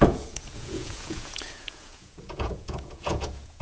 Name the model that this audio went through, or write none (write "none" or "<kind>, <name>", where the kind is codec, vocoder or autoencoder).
vocoder, Vocos